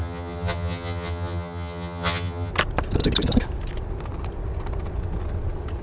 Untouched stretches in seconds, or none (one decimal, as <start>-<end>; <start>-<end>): 2.5-5.8